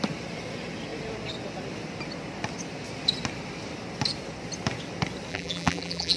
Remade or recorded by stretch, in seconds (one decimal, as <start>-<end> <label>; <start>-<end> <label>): 0.0-5.3 recorded; 5.3-6.2 remade